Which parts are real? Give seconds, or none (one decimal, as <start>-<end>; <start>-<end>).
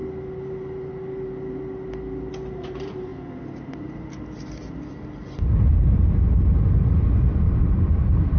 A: 0.0-8.4